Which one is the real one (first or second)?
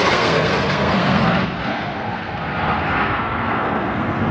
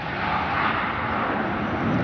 second